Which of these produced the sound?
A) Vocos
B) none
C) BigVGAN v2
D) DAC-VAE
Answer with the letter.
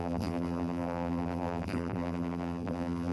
C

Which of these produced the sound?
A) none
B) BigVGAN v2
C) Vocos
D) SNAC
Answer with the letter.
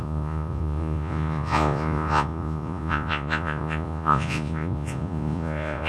C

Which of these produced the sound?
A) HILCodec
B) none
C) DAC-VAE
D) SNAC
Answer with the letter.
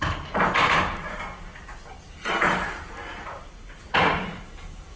B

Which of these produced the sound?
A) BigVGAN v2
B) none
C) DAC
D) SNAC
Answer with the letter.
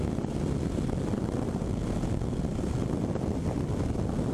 B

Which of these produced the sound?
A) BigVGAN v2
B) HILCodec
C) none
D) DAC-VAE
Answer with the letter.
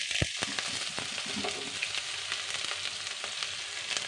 C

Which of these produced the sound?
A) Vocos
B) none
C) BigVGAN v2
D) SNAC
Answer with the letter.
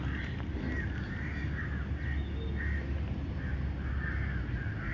B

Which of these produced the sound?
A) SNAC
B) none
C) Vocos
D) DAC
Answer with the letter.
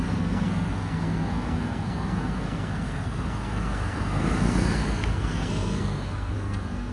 A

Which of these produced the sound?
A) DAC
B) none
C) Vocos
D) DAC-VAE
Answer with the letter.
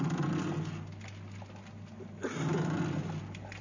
B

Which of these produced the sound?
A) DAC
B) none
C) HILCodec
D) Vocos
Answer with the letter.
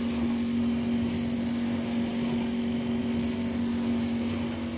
B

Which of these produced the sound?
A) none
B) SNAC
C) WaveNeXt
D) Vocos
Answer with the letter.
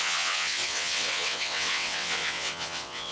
C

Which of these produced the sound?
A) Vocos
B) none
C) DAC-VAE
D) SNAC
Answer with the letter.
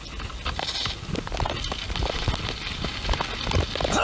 B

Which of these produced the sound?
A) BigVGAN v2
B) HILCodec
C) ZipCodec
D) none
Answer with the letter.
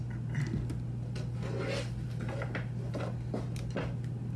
D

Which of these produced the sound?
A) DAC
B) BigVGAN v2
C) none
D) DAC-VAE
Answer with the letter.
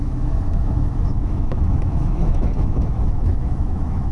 D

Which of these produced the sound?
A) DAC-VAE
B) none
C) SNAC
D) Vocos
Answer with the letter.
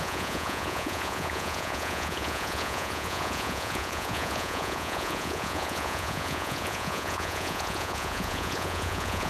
D